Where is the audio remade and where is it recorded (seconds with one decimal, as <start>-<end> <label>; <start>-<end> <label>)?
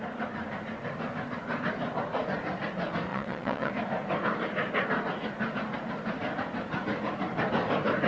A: 0.0-3.1 recorded; 3.1-3.7 remade; 3.7-8.1 recorded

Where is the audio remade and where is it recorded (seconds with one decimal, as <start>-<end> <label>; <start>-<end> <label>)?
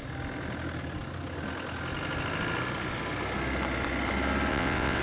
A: 0.0-4.5 recorded; 4.5-5.0 remade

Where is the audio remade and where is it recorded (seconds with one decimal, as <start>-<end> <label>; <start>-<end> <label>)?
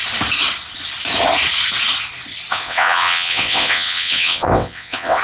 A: 0.0-2.5 recorded; 2.5-5.2 remade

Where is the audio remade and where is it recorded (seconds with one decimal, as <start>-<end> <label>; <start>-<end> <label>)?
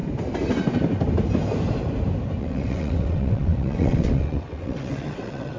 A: 0.0-2.4 recorded; 2.4-5.6 remade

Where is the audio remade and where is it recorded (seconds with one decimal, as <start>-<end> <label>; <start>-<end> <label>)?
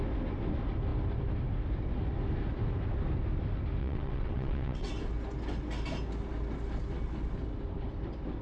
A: 0.0-3.8 recorded; 3.8-4.9 remade; 4.9-8.4 recorded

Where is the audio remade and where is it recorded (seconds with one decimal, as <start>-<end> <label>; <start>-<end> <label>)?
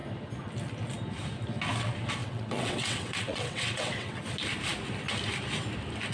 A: 0.0-2.2 recorded; 2.2-4.2 remade; 4.2-6.1 recorded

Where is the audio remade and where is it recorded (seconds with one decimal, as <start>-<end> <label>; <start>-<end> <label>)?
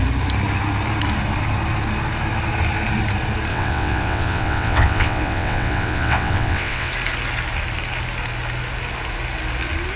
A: 0.0-3.5 recorded; 3.5-6.9 remade; 6.9-10.0 recorded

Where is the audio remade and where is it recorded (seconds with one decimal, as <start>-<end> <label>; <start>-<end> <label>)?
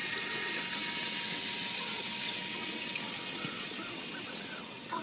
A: 0.0-5.0 remade